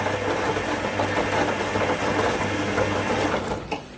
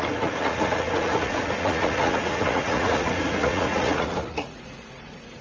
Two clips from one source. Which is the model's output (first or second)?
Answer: second